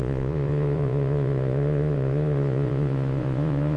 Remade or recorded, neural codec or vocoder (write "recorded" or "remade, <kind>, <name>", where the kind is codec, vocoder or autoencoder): remade, vocoder, Vocos